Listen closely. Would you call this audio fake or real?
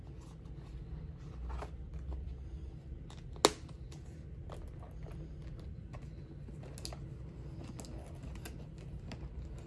real